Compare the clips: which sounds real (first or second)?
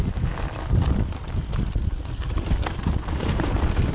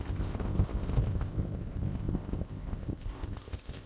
first